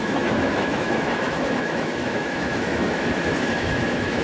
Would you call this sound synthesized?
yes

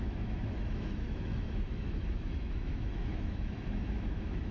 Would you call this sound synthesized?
yes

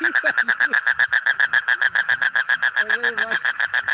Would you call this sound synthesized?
yes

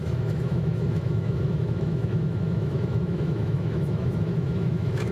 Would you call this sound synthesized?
yes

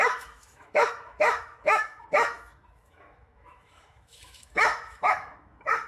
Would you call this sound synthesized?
yes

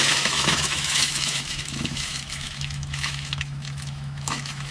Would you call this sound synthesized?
yes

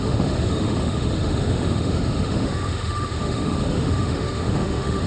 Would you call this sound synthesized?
yes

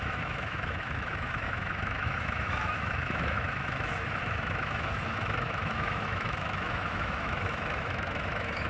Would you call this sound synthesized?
yes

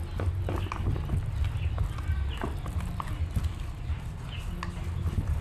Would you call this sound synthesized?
no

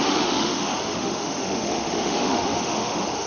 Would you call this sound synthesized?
yes